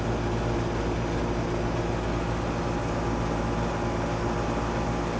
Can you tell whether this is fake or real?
real